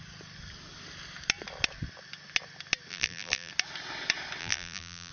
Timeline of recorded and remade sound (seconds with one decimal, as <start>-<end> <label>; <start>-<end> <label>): 0.0-2.9 recorded; 2.9-3.5 remade; 3.5-4.4 recorded; 4.4-5.1 remade